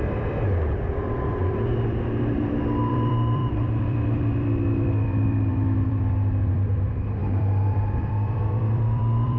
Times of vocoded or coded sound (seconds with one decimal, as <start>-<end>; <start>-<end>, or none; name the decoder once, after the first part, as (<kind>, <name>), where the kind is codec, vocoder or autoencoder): 0.0-9.4 (vocoder, BigVGAN v2)